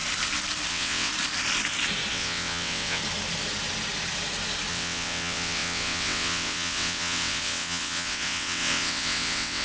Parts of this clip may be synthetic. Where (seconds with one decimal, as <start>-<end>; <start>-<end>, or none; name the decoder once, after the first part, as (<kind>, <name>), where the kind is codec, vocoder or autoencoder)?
0.7-1.1 (vocoder, WaveNeXt); 2.1-3.0; 4.7-9.6

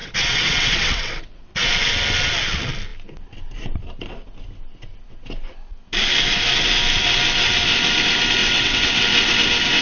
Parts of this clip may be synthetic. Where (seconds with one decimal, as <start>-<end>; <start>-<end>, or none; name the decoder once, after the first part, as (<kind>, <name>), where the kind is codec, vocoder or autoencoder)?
0.0-1.7 (vocoder, WaveNeXt); 8.4-9.0